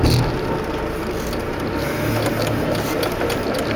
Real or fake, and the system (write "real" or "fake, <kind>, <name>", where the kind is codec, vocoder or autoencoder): real